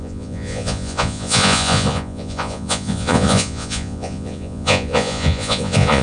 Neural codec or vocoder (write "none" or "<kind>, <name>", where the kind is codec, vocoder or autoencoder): vocoder, Vocos